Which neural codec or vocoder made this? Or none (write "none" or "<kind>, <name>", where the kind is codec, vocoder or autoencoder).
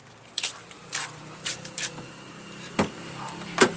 vocoder, BigVGAN v2